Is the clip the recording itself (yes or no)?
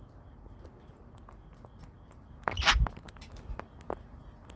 yes